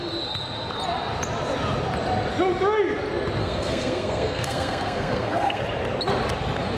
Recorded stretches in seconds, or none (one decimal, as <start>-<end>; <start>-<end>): 0.0-3.4; 5.6-6.8